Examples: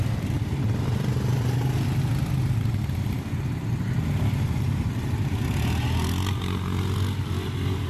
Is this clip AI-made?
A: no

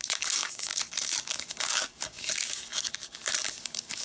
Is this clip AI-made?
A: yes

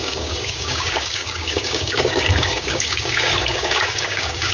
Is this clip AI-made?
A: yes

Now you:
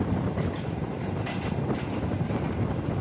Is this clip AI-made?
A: no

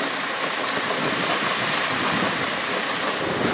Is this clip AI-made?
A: no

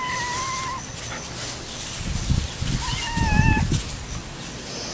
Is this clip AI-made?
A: no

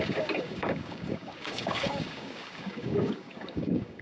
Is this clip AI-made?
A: yes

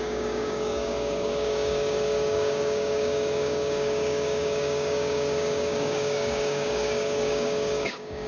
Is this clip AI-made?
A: yes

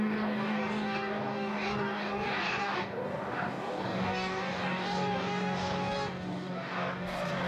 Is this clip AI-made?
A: yes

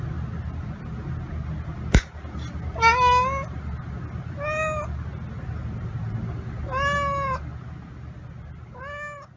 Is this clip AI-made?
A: no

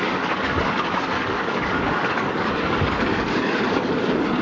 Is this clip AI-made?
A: yes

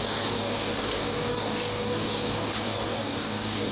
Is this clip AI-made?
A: yes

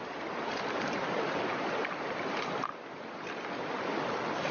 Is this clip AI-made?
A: no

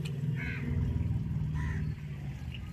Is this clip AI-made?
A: no